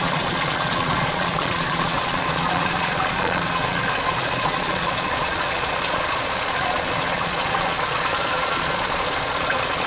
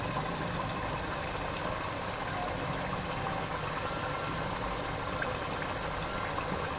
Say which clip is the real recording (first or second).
second